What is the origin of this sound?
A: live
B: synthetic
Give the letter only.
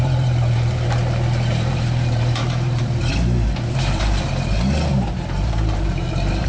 B